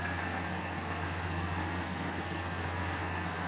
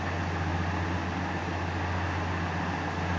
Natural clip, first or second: second